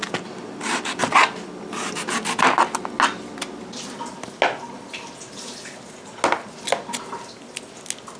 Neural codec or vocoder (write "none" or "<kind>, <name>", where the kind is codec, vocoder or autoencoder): none